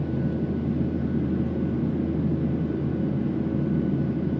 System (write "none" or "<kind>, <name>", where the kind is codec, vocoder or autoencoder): none